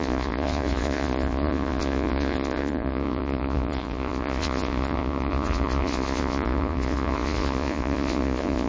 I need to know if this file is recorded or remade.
remade